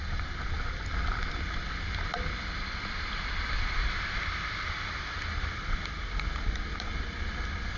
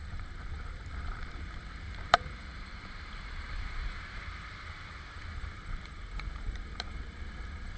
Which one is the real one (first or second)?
first